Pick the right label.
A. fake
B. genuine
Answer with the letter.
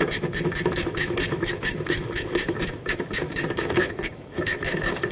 A